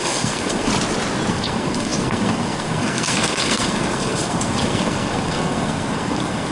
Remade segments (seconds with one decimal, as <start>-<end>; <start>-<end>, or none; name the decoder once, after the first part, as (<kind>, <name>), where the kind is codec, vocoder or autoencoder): 0.0-0.7 (codec, SNAC); 1.3-6.5